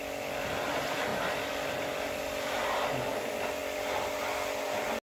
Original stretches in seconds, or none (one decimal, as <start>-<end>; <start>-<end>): 0.0-5.2